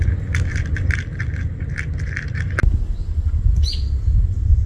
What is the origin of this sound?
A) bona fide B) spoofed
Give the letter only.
A